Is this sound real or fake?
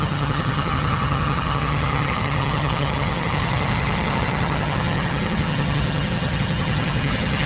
fake